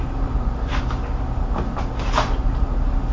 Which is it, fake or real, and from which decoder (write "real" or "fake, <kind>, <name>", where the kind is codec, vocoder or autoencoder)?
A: real